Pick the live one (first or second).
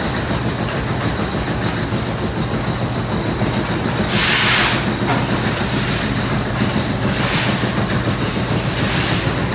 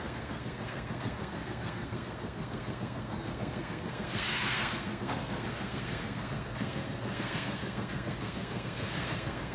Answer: first